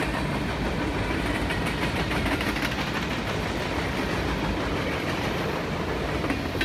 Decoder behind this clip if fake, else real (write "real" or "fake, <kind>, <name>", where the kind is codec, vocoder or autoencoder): real